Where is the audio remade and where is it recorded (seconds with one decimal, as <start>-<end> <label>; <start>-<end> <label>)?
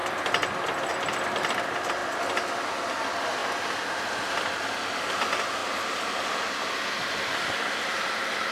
0.0-0.9 recorded; 0.9-2.0 remade; 2.0-2.9 recorded; 2.9-5.6 remade; 5.6-7.3 recorded; 7.3-8.5 remade